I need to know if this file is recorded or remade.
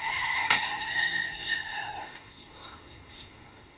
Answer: remade